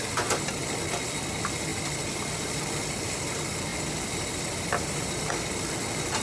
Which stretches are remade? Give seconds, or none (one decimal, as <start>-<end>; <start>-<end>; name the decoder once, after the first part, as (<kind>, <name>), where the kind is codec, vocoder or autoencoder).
1.7-2.6 (vocoder, BigVGAN v2); 3.7-5.3